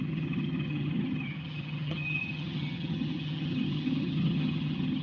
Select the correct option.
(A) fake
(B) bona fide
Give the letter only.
A